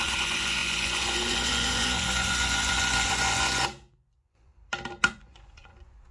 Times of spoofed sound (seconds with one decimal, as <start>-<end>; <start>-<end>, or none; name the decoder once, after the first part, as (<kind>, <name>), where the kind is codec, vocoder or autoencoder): 0.0-4.5 (vocoder, Vocos); 5.1-6.1